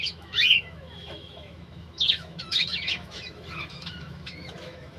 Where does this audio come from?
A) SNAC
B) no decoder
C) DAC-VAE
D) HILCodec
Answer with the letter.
C